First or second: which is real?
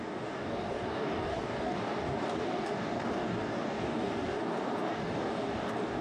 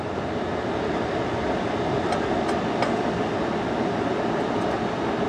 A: second